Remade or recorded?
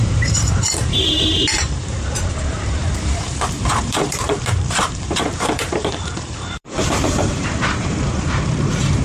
remade